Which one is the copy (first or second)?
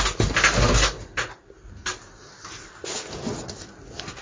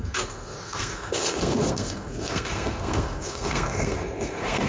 second